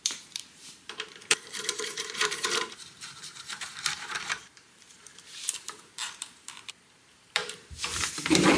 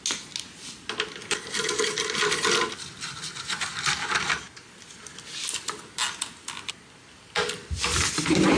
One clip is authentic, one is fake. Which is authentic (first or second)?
second